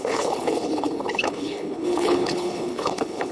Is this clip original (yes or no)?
no